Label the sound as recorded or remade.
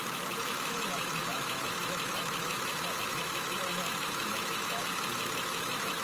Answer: remade